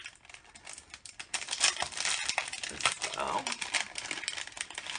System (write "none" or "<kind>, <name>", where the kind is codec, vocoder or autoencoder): none